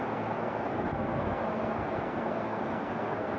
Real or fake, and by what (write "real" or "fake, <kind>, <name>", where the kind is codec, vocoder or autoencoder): fake, codec, SNAC